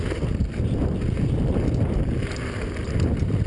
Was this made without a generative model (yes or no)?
yes